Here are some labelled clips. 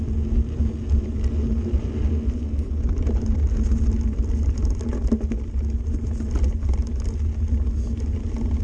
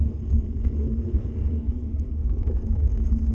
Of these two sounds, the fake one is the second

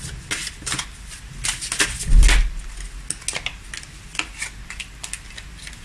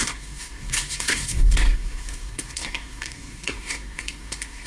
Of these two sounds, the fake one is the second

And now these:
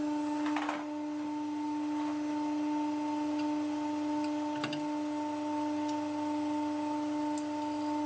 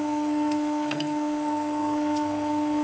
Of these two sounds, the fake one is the second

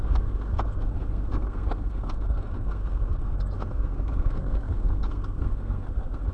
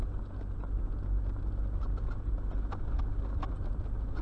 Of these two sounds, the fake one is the first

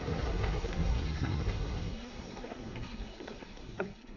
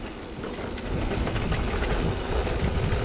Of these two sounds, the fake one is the first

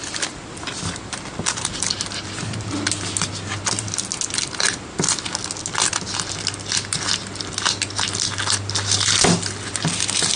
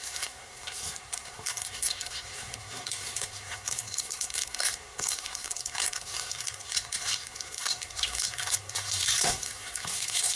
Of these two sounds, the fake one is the second